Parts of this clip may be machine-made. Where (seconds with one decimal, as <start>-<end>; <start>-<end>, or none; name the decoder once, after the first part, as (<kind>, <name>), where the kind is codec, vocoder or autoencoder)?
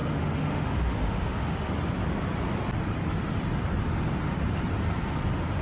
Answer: 0.0-1.7 (autoencoder, DAC-VAE)